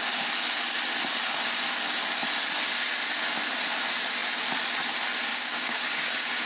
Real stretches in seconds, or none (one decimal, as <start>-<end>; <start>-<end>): 0.0-5.3